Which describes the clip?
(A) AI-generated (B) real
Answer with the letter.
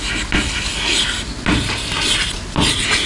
B